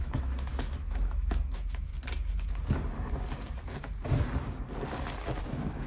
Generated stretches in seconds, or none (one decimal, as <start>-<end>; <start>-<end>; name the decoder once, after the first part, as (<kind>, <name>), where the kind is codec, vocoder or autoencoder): 0.0-1.9 (autoencoder, DAC-VAE); 5.4-5.9